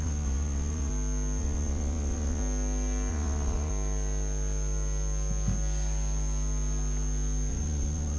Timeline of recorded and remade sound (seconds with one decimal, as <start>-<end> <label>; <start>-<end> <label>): 0.0-0.9 remade; 0.9-1.4 recorded; 1.4-2.4 remade; 2.4-3.1 recorded; 3.1-3.7 remade; 3.7-7.5 recorded; 7.5-8.2 remade